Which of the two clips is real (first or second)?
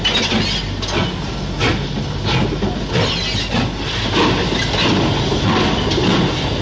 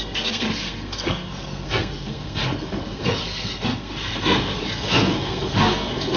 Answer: first